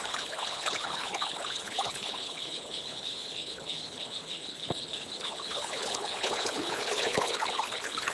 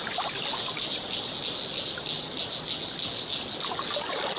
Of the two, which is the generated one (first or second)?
first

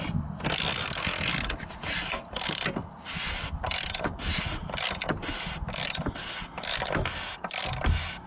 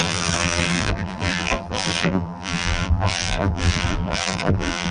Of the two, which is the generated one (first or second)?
second